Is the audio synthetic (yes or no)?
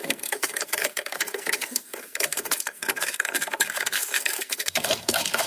yes